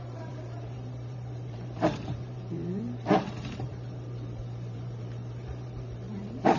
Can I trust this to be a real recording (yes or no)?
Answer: no